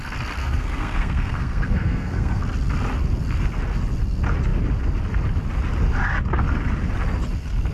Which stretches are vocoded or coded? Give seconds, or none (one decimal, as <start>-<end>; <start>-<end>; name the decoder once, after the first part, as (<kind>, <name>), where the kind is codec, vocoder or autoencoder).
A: 0.4-2.4 (codec, SNAC)